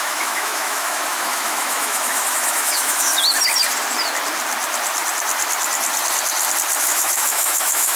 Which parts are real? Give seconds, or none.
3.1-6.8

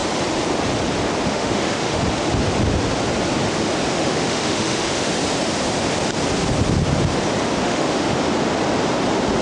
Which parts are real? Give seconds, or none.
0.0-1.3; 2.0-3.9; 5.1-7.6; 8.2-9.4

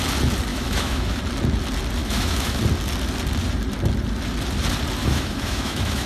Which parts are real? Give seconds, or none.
0.0-0.5; 1.2-2.0; 2.6-5.0